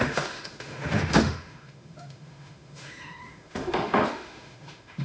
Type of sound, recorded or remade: remade